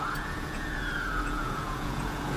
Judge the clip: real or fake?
fake